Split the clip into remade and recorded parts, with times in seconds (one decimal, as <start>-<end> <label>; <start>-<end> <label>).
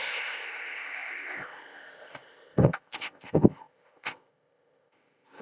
0.0-5.4 remade